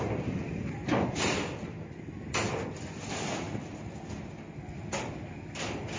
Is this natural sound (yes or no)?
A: yes